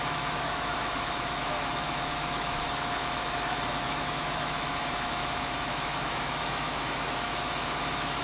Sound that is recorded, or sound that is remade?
remade